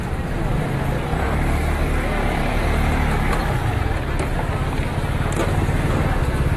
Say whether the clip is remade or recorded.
recorded